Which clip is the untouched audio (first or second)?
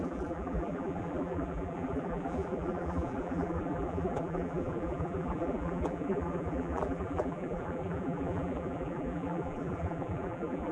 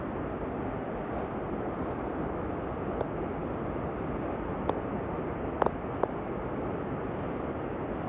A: second